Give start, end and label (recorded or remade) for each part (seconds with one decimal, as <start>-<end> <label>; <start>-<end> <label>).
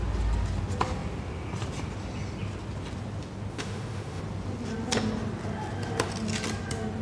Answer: 0.0-3.5 recorded; 3.5-4.2 remade; 4.2-7.0 recorded